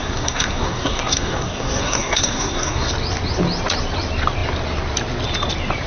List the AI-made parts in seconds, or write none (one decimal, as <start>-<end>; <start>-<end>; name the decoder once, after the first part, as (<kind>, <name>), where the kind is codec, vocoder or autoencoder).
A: 0.0-2.9 (codec, SNAC)